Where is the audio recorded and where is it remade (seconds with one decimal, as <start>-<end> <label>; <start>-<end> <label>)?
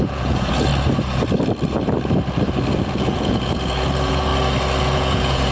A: 0.0-0.7 remade; 0.7-3.0 recorded; 3.0-4.3 remade; 4.3-4.8 recorded; 4.8-5.5 remade